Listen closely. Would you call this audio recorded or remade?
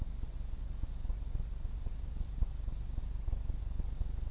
remade